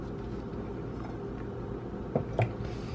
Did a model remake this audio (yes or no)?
no